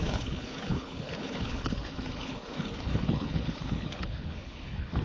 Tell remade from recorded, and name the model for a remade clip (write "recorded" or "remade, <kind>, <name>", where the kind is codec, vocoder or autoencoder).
remade, codec, HILCodec